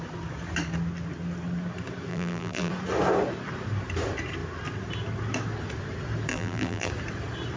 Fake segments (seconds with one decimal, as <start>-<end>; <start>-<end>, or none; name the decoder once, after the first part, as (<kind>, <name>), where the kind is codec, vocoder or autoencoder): 2.1-2.7 (vocoder, BigVGAN v2); 6.3-6.9